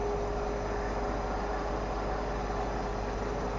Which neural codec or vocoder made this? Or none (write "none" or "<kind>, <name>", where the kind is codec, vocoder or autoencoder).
none